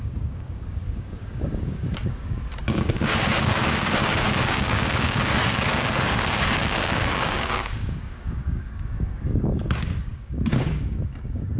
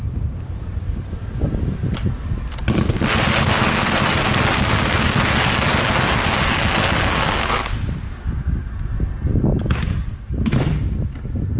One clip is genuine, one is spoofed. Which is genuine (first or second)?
second